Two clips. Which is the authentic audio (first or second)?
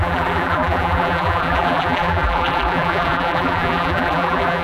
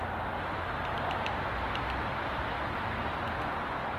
second